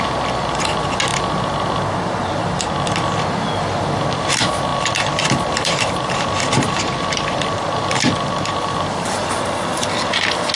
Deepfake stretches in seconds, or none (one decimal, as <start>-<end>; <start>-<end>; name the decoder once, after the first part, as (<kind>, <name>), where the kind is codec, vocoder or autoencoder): 4.7-9.3 (vocoder, BigVGAN v2)